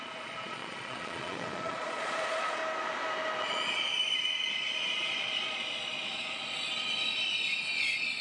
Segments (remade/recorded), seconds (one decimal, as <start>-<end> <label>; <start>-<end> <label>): 0.0-2.6 remade; 2.6-3.4 recorded; 3.4-3.9 remade; 3.9-4.8 recorded; 4.8-6.7 remade; 6.7-7.7 recorded; 7.7-8.2 remade